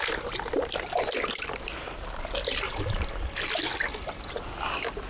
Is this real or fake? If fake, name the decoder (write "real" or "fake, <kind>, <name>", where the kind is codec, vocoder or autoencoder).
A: real